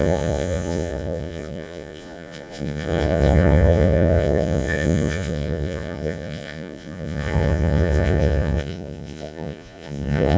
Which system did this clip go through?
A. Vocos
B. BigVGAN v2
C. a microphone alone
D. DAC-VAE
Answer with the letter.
A